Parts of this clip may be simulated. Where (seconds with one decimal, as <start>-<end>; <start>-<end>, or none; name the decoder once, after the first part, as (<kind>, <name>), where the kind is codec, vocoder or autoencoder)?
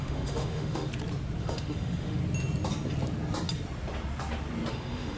0.0-0.9 (autoencoder, DAC-VAE); 1.4-2.2; 4.7-5.2